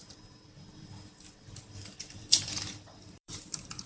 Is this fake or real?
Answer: fake